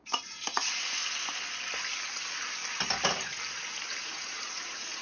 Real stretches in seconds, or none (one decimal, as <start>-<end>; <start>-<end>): 1.0-4.0